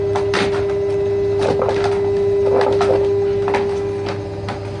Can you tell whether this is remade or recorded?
recorded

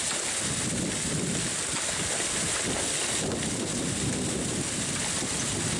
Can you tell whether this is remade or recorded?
recorded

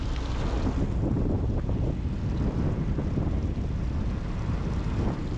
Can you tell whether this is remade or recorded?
recorded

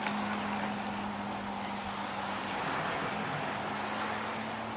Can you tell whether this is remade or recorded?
recorded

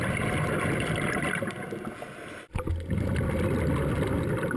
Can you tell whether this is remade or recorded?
recorded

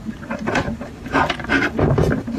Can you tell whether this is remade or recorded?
remade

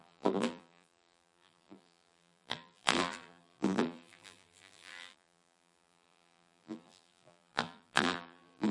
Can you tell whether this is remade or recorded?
remade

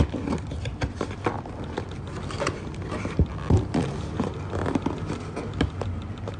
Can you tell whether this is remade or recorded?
recorded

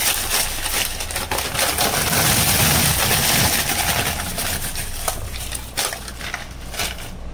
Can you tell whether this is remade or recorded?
recorded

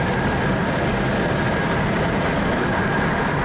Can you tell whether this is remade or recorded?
recorded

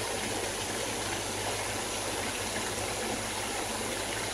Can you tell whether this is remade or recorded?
recorded